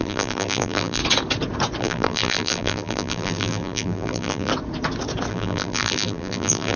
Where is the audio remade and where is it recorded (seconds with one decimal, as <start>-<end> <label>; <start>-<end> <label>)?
0.0-1.0 remade; 1.0-1.8 recorded; 1.8-4.5 remade; 4.5-5.3 recorded; 5.3-6.8 remade

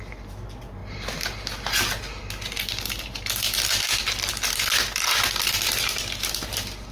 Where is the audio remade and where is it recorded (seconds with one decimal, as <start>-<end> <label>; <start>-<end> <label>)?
0.0-6.9 recorded